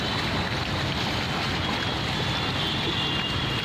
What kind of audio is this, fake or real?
real